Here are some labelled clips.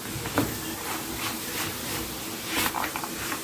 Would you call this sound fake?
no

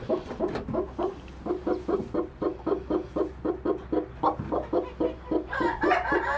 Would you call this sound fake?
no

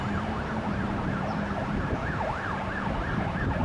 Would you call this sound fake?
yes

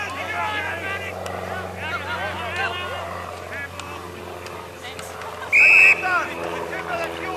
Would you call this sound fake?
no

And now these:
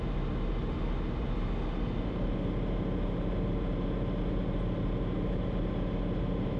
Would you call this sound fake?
no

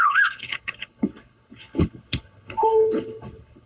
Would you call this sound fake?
yes